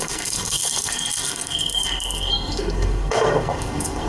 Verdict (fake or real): fake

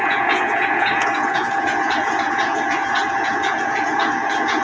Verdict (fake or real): fake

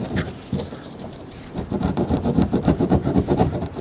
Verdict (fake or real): fake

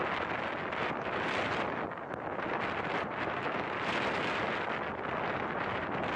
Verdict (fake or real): real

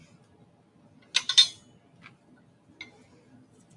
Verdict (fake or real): real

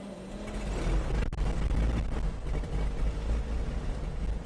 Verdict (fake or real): real